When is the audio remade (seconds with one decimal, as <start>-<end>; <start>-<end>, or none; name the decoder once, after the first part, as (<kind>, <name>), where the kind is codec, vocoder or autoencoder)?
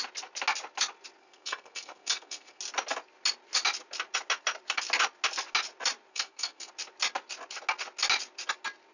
1.2-2.6 (codec, SNAC); 6.1-6.7